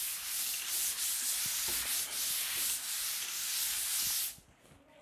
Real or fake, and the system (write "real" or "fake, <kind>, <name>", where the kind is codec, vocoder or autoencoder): real